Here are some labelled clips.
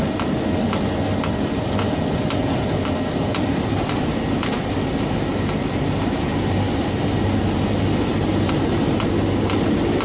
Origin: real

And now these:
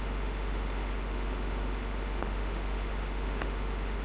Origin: fake